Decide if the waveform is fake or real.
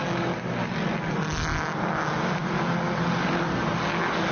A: real